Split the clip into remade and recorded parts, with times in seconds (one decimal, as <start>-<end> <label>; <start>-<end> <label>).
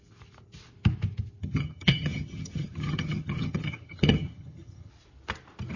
0.0-1.4 recorded; 1.4-4.9 remade; 4.9-5.8 recorded